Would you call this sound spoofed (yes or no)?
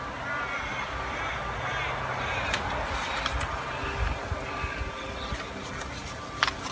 no